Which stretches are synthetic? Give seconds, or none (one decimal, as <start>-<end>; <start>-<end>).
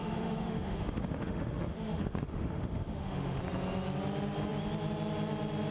0.0-3.4